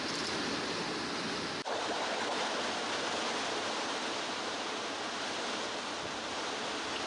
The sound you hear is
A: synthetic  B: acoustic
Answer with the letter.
B